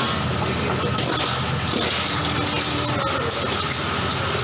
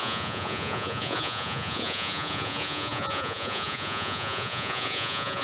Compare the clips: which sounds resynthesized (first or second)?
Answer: second